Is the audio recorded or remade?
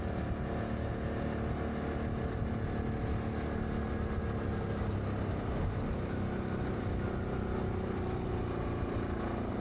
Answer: recorded